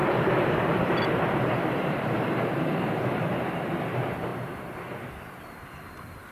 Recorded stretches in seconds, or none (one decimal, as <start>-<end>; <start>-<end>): 3.8-6.3

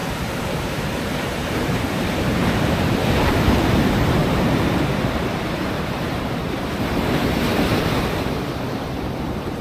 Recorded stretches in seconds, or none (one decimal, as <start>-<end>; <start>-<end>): 7.5-8.0

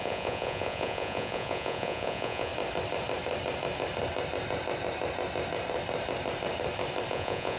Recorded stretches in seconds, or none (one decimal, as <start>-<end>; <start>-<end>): 2.5-7.1

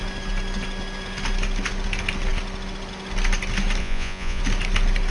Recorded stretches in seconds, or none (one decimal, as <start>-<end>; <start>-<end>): 0.0-3.8; 4.4-5.1

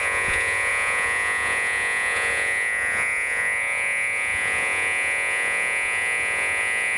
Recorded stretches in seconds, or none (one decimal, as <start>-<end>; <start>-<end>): none

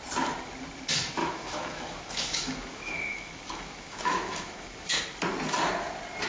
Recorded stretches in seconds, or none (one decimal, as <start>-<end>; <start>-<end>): 0.0-1.2; 5.0-6.3

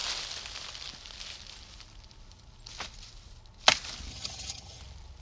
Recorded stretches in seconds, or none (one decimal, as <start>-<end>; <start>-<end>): 0.0-4.1; 4.8-5.2

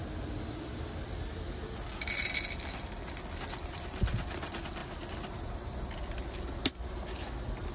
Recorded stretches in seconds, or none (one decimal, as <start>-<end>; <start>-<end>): 0.0-7.7